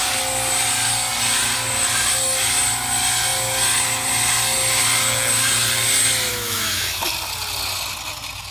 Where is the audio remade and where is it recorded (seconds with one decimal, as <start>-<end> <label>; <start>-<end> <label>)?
0.0-6.3 recorded; 6.3-7.0 remade; 7.0-8.5 recorded